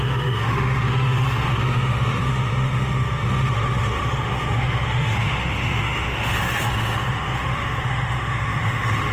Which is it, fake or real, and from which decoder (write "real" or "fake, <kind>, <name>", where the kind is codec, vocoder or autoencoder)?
fake, autoencoder, DAC-VAE